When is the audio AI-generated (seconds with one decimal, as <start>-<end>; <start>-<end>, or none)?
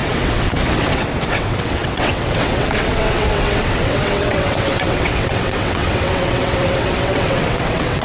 0.0-8.0